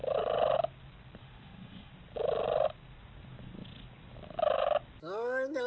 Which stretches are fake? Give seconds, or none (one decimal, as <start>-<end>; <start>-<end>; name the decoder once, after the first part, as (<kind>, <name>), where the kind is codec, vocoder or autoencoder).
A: 1.2-1.9 (autoencoder, DAC-VAE)